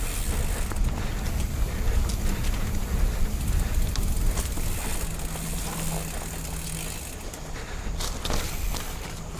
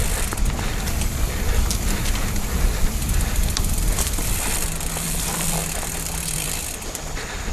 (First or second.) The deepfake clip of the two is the second